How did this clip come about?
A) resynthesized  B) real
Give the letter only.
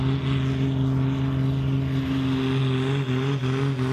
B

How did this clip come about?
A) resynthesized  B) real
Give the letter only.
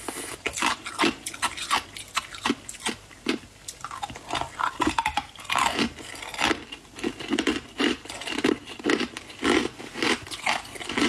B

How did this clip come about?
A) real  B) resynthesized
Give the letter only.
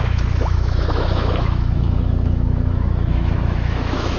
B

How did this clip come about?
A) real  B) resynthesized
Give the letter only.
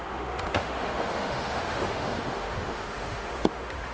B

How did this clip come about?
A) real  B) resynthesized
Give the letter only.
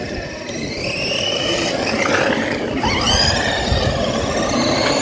A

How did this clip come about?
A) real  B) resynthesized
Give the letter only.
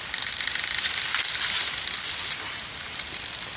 A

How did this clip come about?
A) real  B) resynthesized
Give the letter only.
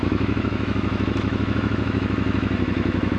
B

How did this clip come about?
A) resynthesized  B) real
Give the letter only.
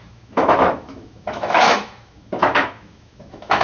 A